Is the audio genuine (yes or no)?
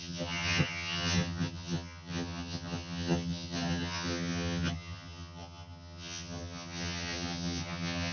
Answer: no